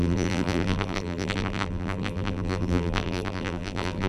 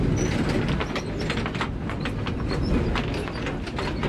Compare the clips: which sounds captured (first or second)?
second